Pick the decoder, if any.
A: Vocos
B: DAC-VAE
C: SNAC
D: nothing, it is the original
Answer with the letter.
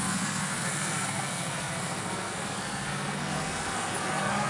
C